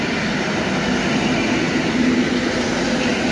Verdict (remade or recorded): recorded